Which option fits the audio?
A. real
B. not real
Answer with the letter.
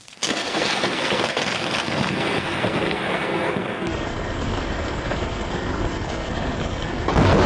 B